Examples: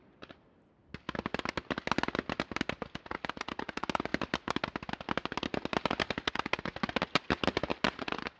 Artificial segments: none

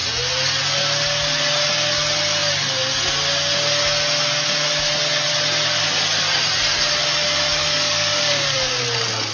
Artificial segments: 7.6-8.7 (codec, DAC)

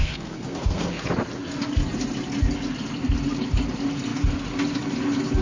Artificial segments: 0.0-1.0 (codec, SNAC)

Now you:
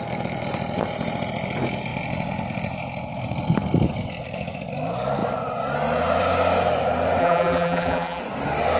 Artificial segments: 7.2-8.2 (vocoder, BigVGAN v2)

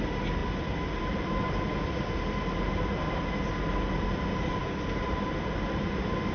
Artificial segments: none

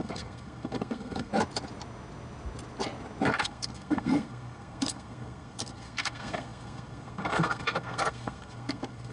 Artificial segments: 0.0-1.3 (codec, SNAC); 3.4-9.1